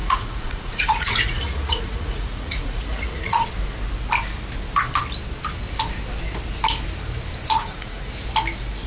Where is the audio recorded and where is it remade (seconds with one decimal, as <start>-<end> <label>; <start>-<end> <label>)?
0.0-3.5 remade; 3.5-7.6 recorded; 7.6-8.1 remade; 8.1-8.9 recorded

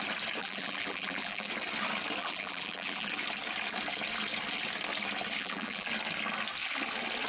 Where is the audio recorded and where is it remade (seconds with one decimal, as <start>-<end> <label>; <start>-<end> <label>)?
0.0-0.4 recorded; 0.4-1.5 remade; 1.5-2.2 recorded; 2.2-3.1 remade; 3.1-5.4 recorded; 5.4-5.9 remade; 5.9-7.3 recorded

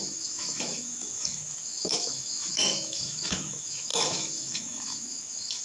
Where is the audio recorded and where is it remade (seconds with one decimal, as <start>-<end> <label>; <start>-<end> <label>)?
0.0-5.6 remade